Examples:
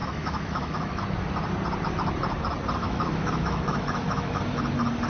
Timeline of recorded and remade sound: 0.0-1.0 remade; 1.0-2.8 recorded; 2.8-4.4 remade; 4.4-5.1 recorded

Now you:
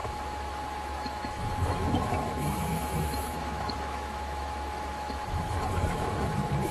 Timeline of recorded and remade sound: 0.0-6.7 remade

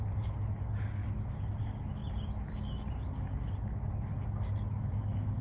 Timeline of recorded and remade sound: 0.0-5.4 recorded

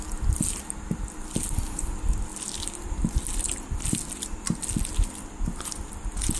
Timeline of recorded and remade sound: 0.0-6.4 recorded